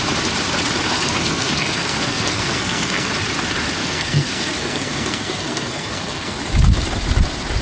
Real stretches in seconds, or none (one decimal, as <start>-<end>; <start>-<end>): 0.0-0.9; 3.1-3.8; 6.4-7.6